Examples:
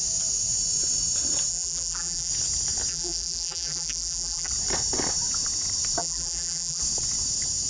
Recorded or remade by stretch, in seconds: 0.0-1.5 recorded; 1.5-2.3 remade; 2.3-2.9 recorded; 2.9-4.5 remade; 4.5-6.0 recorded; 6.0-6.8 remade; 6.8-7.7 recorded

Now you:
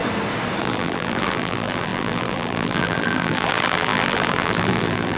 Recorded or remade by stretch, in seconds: 0.0-0.6 recorded; 0.6-5.2 remade